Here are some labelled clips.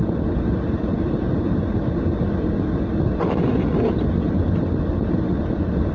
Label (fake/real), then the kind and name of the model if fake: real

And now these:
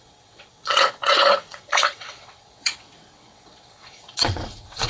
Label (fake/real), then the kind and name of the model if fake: fake, vocoder, WaveNeXt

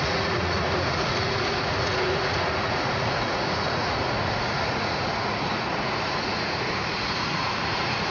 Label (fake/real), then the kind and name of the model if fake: fake, vocoder, Vocos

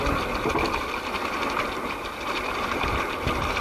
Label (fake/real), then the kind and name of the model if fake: real